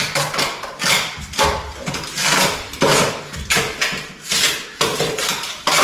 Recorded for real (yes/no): yes